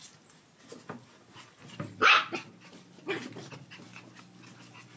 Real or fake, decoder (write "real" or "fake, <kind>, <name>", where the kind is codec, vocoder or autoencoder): real